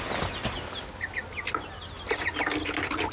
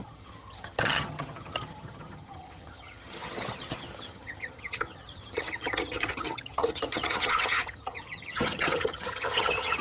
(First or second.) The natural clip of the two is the first